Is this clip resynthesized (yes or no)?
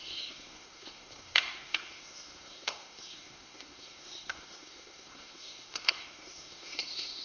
yes